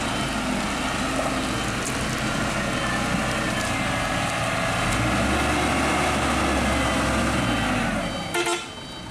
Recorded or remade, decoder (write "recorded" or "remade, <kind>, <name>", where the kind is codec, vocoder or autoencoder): recorded